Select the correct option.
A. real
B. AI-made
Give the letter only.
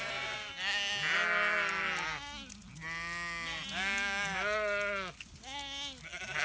A